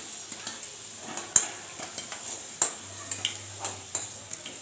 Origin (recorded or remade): recorded